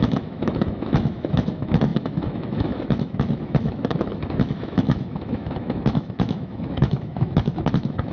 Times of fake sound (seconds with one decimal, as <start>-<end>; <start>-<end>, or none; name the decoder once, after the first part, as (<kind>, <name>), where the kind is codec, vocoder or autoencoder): 0.0-8.1 (autoencoder, DAC-VAE)